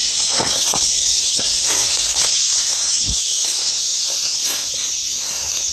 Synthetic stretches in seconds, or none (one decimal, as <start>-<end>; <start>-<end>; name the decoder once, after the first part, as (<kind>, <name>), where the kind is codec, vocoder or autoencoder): 0.0-5.7 (codec, SNAC)